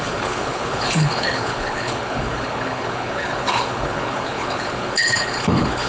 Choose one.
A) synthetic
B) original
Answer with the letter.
A